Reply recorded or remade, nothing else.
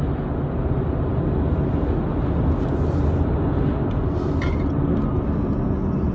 recorded